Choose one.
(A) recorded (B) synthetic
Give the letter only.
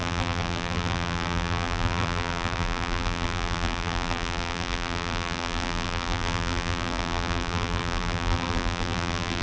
B